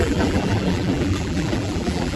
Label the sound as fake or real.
fake